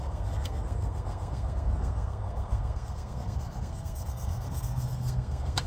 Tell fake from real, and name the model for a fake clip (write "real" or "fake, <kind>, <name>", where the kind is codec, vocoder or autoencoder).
fake, codec, SNAC